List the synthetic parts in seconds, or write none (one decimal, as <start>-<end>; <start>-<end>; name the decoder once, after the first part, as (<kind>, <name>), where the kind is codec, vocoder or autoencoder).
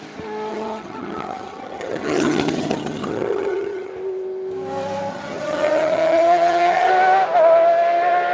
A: 0.5-3.9 (vocoder, HiFi-GAN); 5.1-6.9